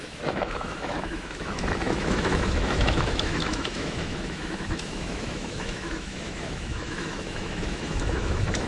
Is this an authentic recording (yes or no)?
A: no